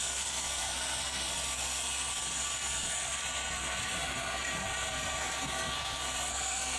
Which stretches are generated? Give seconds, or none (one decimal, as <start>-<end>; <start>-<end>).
0.0-6.8

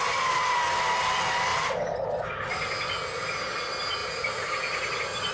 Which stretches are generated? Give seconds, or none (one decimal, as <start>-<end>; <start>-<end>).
none

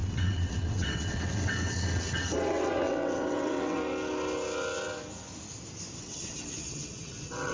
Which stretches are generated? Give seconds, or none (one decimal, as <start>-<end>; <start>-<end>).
0.0-3.8; 6.0-7.5

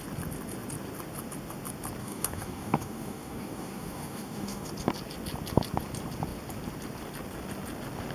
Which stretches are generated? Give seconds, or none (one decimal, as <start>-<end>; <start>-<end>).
2.0-4.7

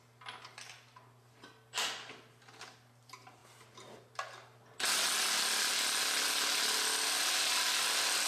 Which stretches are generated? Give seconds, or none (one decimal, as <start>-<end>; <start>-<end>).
none

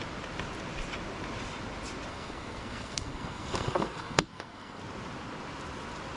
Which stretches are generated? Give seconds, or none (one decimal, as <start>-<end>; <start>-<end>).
2.1-4.8

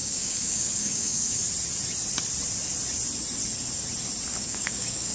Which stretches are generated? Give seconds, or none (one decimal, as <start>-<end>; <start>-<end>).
0.0-1.4; 4.3-5.1

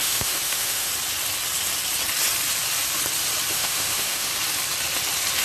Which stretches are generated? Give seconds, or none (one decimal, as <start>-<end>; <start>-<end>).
0.0-0.9; 3.5-4.3